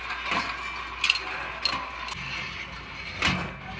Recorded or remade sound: recorded